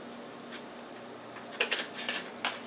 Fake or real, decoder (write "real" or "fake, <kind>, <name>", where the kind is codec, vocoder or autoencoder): real